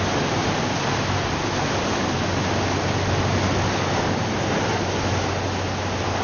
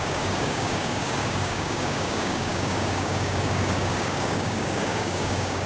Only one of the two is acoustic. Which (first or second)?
first